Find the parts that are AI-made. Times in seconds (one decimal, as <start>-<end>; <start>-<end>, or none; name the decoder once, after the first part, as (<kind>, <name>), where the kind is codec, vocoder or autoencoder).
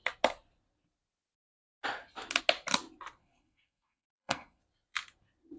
3.2-4.6 (codec, SNAC)